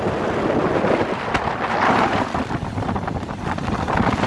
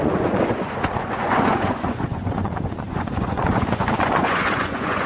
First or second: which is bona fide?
first